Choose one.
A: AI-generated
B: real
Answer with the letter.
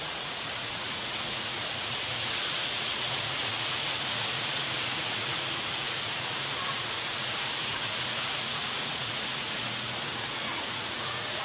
A